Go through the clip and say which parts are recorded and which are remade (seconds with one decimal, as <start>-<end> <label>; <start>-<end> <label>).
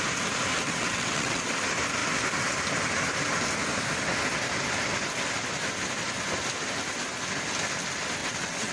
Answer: 0.0-0.5 recorded; 0.5-1.5 remade; 1.5-8.2 recorded; 8.2-8.7 remade